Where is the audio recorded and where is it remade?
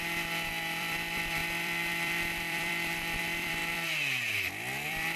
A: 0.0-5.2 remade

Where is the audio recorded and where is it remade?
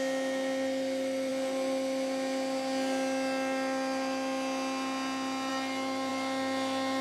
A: 0.0-7.0 recorded